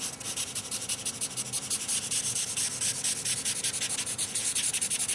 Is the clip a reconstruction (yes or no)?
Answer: no